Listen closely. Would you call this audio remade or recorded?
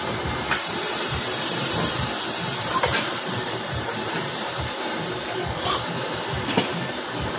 remade